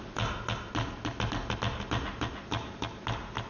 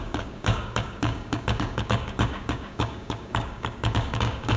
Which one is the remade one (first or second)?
second